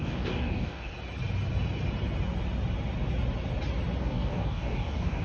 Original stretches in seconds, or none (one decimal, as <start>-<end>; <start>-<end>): 0.9-4.0